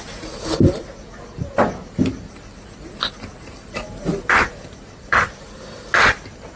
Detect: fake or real real